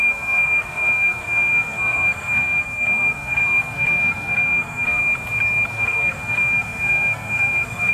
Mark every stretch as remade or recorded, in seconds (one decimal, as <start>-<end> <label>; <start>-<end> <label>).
0.0-5.0 remade; 5.0-5.7 recorded; 5.7-7.9 remade